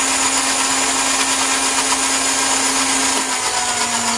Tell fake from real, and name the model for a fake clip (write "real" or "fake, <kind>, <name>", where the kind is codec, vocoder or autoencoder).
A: real